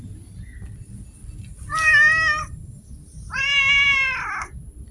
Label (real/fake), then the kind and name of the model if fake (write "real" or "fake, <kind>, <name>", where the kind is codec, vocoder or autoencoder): real